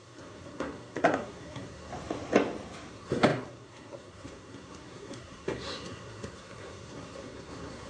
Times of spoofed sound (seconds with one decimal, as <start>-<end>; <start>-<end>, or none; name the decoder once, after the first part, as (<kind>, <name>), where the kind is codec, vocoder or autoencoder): 0.0-1.9 (codec, SNAC); 2.9-7.9